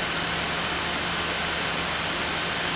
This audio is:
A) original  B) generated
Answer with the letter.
A